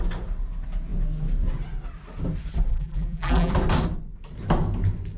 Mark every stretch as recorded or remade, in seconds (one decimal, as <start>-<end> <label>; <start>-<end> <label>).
0.0-2.7 recorded; 2.7-3.5 remade; 3.5-5.2 recorded